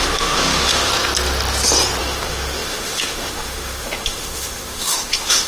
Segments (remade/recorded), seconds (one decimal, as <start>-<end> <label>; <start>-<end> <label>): 0.0-0.9 remade; 0.9-2.0 recorded; 2.0-5.5 remade